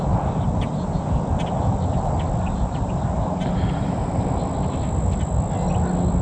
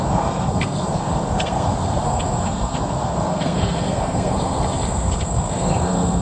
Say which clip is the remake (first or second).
second